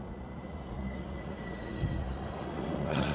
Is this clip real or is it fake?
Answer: fake